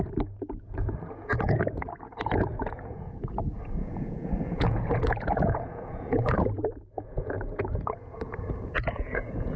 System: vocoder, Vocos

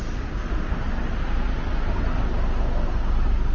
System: none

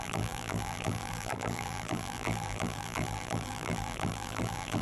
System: vocoder, BigVGAN v2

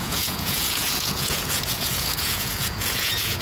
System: vocoder, Vocos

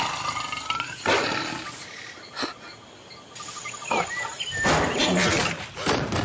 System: none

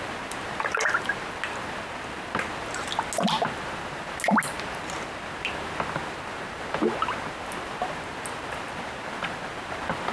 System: none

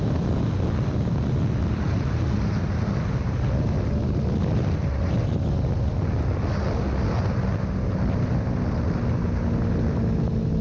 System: none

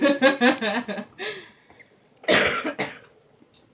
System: none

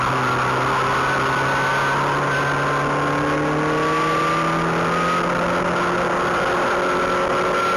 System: none